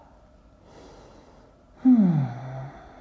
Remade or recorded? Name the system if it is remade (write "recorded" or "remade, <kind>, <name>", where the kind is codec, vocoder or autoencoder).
recorded